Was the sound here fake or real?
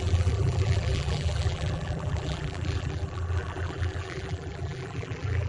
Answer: fake